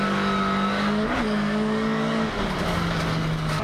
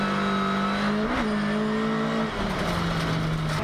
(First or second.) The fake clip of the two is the first